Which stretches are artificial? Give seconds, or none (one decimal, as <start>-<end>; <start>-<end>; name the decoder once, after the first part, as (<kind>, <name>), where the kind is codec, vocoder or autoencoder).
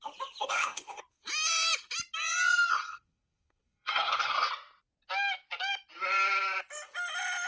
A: 0.4-1.0 (codec, SNAC); 2.7-4.5